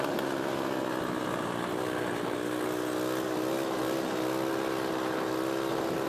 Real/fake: real